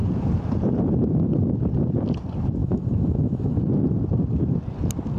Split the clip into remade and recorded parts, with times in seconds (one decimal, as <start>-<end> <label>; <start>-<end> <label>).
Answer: 0.0-2.6 recorded; 2.6-3.6 remade; 3.6-5.2 recorded